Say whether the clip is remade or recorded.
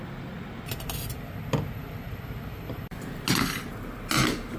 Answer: recorded